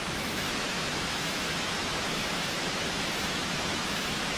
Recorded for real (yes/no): no